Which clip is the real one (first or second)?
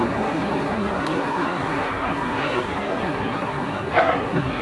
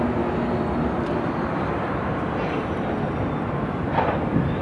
second